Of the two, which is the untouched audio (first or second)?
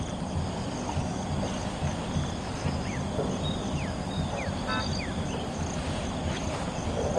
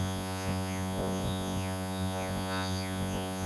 first